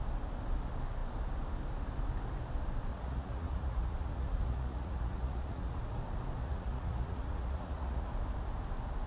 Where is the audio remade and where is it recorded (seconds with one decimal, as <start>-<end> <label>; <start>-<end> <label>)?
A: 0.0-2.9 recorded; 2.9-5.8 remade; 5.8-6.4 recorded; 6.4-8.1 remade; 8.1-9.1 recorded